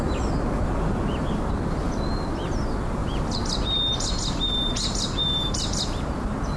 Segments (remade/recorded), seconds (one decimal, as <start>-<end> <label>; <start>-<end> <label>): 0.0-6.6 recorded